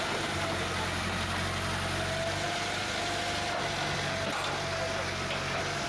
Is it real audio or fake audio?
real